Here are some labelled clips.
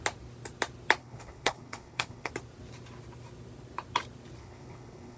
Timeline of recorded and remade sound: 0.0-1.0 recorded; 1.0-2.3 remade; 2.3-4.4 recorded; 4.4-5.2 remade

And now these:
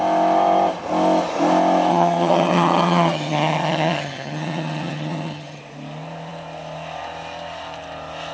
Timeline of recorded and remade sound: 0.0-1.9 recorded; 1.9-5.6 remade; 5.6-8.3 recorded

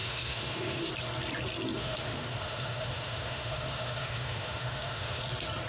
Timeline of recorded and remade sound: 0.0-0.9 remade; 0.9-1.8 recorded; 1.8-5.2 remade; 5.2-5.7 recorded